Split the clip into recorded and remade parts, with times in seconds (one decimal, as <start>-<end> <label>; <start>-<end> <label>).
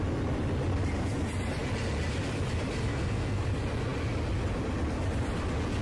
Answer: 0.0-2.9 recorded; 2.9-3.4 remade; 3.4-5.8 recorded